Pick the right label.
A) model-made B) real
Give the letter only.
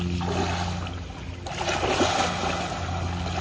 B